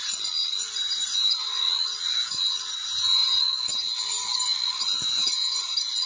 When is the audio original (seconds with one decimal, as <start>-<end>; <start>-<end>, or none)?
0.0-6.1